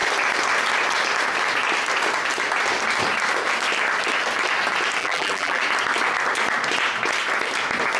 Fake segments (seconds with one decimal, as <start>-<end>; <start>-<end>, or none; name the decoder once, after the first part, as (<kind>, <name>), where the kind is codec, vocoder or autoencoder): 5.0-5.6 (vocoder, BigVGAN v2)